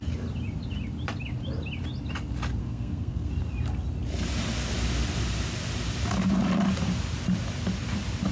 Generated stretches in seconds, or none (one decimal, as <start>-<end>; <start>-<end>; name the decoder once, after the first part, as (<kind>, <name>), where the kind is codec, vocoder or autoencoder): 2.6-3.3 (codec, SNAC)